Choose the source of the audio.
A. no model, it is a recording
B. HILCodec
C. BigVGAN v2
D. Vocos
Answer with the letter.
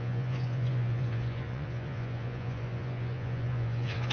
D